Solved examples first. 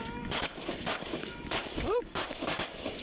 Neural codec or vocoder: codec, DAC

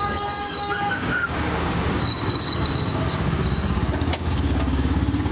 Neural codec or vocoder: codec, DAC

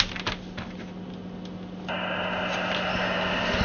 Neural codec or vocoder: none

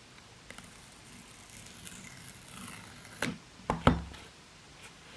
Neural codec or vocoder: none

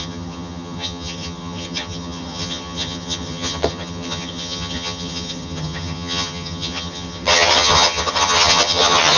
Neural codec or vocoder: vocoder, HiFi-GAN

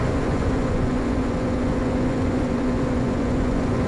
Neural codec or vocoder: vocoder, Vocos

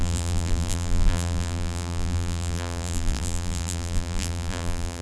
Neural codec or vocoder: vocoder, BigVGAN v2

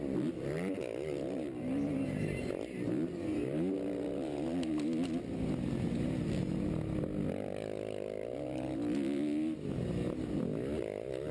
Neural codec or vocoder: none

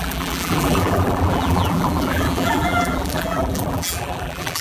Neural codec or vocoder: vocoder, BigVGAN v2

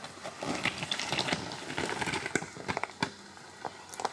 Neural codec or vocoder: none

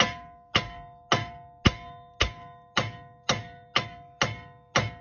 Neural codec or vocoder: none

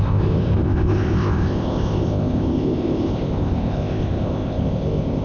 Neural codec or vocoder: codec, ZipCodec